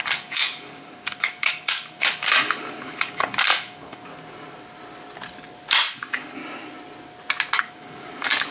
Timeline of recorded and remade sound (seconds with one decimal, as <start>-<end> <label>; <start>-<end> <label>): 0.0-4.1 remade; 4.1-5.9 recorded; 5.9-6.4 remade; 6.4-7.6 recorded; 7.6-8.5 remade